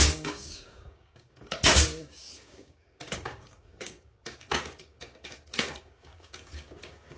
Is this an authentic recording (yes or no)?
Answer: no